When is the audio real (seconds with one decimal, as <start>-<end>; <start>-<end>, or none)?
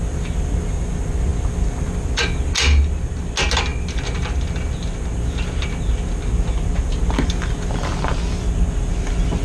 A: 0.0-9.4